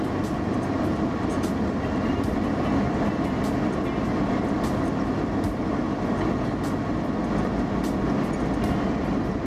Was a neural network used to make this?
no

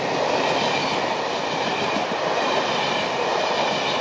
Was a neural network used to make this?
no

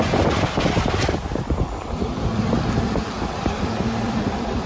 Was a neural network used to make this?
yes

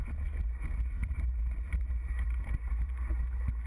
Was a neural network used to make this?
yes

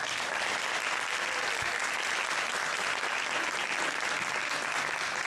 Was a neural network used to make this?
no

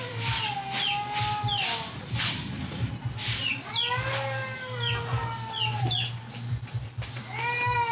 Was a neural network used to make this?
no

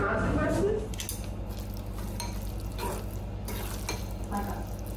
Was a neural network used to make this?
no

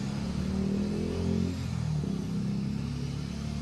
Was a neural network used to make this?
no